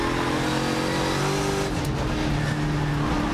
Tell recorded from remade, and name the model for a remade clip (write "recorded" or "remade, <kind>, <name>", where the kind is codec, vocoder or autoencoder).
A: recorded